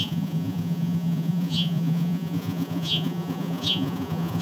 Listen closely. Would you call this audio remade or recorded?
remade